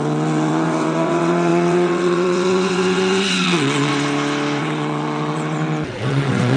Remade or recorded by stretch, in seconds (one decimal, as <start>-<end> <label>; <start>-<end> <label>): 0.0-3.9 remade; 3.9-4.6 recorded; 4.6-6.6 remade